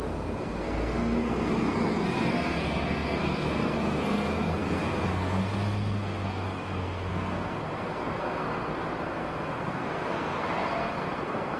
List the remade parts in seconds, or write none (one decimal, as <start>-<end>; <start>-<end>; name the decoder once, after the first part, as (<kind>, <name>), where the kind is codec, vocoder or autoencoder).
0.0-11.6 (codec, SNAC)